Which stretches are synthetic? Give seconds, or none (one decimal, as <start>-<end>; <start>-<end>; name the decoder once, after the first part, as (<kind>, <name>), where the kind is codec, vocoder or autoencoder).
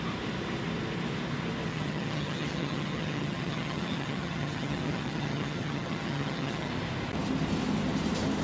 1.7-6.7 (vocoder, HiFi-GAN)